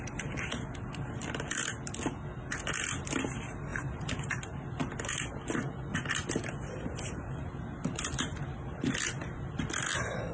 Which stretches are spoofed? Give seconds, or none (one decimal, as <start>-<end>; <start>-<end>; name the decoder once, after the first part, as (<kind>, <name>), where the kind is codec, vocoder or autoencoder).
0.0-1.6 (vocoder, BigVGAN v2); 2.6-4.8; 6.4-10.3